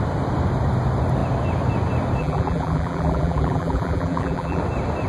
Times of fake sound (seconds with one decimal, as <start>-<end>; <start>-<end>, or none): 2.2-4.6